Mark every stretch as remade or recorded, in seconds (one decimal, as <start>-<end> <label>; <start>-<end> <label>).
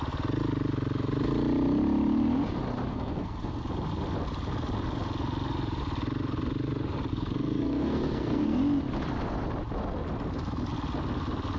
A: 0.0-2.9 recorded; 2.9-3.6 remade; 3.6-7.1 recorded; 7.1-8.6 remade; 8.6-11.6 recorded